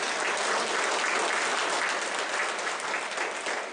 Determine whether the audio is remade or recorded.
recorded